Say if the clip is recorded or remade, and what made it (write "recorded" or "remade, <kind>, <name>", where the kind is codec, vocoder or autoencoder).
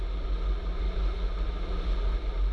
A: recorded